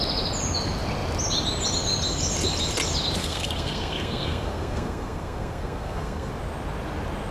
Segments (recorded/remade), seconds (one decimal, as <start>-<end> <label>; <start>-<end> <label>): 0.0-3.2 recorded; 3.2-6.3 remade; 6.3-7.3 recorded